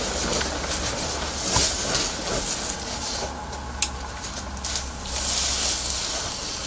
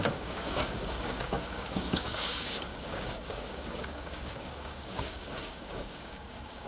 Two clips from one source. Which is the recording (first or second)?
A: first